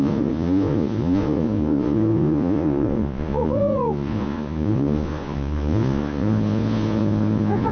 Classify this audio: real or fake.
fake